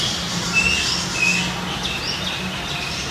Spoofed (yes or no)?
no